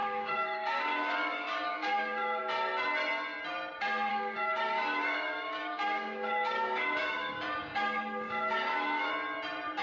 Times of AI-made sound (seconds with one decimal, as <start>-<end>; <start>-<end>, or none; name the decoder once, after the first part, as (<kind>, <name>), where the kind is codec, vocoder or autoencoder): 0.0-2.4 (codec, DAC); 4.1-9.1